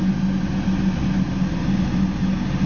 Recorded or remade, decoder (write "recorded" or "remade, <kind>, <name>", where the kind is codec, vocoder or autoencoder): recorded